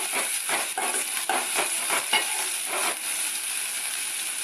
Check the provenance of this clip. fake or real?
real